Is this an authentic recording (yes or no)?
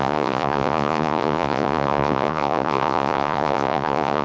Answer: no